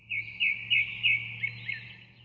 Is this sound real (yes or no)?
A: yes